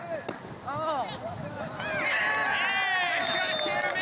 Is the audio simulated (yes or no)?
no